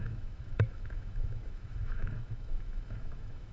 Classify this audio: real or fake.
fake